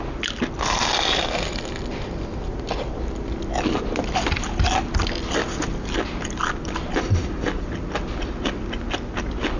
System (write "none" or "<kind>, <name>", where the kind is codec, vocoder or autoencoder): none